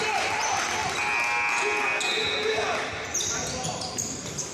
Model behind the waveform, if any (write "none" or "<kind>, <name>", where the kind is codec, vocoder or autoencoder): none